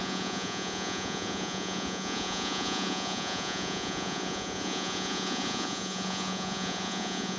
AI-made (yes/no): yes